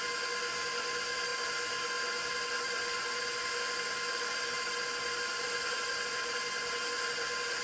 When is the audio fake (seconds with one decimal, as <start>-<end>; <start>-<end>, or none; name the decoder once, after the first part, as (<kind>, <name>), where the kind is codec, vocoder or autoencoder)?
none